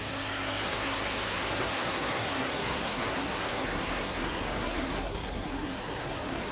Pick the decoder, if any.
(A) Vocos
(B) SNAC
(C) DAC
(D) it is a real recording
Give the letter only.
B